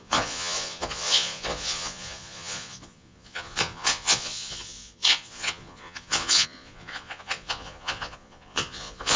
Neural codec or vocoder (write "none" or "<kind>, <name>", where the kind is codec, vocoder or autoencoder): vocoder, Vocos